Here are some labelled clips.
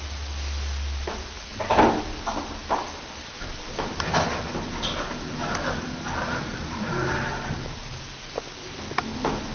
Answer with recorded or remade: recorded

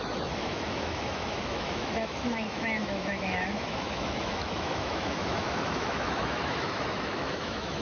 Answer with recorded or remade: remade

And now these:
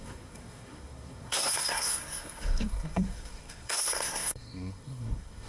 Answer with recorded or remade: remade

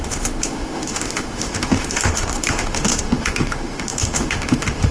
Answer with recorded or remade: remade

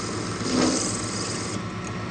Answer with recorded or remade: recorded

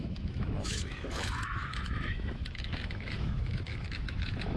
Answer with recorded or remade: remade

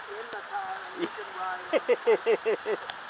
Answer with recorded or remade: recorded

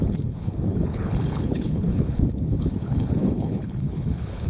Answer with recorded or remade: remade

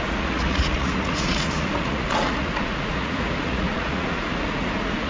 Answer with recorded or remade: remade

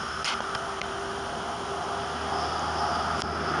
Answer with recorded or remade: recorded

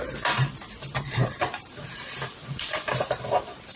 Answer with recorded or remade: remade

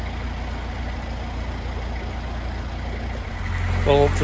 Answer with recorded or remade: recorded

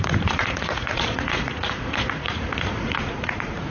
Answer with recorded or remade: remade